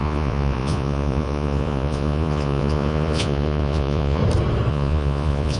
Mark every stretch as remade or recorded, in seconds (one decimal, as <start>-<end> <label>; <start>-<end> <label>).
0.0-4.2 remade; 4.2-4.7 recorded; 4.7-5.6 remade